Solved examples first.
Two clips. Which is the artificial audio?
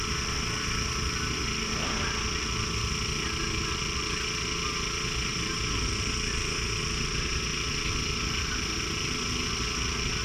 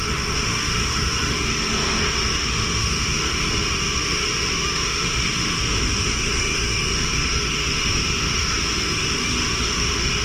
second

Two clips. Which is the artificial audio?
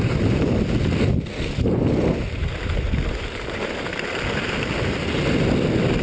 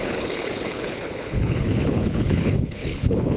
second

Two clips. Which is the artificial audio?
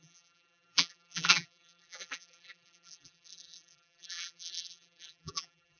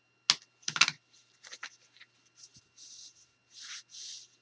first